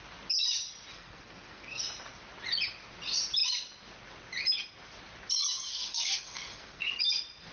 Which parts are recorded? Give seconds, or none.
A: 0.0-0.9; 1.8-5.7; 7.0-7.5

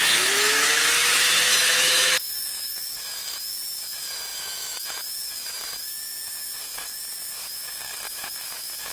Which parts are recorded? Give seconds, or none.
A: none

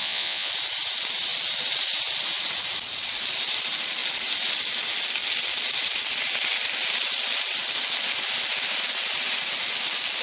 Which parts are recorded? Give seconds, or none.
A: 0.5-10.2